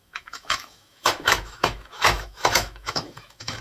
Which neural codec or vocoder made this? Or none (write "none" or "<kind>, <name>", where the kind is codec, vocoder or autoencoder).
autoencoder, DAC-VAE